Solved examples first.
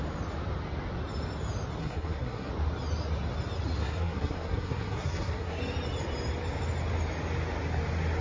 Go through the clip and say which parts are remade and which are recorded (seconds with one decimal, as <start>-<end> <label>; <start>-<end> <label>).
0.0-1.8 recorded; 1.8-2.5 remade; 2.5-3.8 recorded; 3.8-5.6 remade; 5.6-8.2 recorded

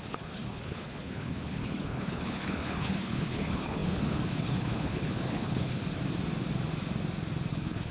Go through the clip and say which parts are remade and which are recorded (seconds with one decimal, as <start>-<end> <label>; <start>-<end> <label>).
0.0-5.8 remade; 5.8-7.5 recorded; 7.5-7.9 remade

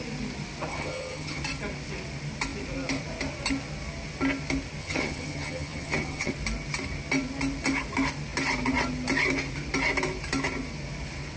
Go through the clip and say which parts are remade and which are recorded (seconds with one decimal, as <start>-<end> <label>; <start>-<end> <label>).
0.0-0.7 recorded; 0.7-1.4 remade; 1.4-4.8 recorded; 4.8-6.3 remade; 6.3-11.4 recorded

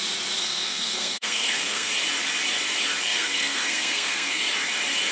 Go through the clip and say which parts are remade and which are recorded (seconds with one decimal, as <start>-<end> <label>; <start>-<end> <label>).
0.0-0.4 recorded; 0.4-1.9 remade; 1.9-3.1 recorded; 3.1-4.4 remade; 4.4-5.1 recorded

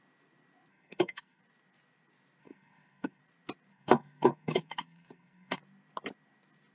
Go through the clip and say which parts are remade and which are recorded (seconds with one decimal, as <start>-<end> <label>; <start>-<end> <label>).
0.0-0.7 recorded; 0.7-1.4 remade; 1.4-2.4 recorded; 2.4-3.2 remade; 3.2-3.7 recorded; 3.7-5.6 remade; 5.6-6.7 recorded